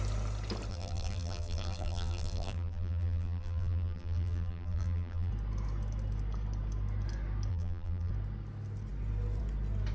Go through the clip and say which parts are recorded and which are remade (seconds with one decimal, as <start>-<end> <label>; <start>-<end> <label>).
0.0-0.7 recorded; 0.7-5.3 remade; 5.3-7.5 recorded; 7.5-8.1 remade; 8.1-9.9 recorded